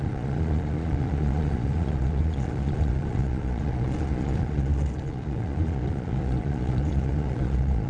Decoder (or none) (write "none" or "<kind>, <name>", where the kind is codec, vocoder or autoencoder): vocoder, Vocos